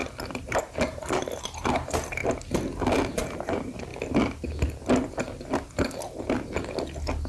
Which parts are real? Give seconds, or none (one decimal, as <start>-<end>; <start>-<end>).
2.2-3.1; 3.9-7.3